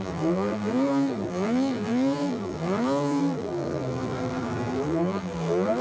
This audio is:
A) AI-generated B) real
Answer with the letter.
A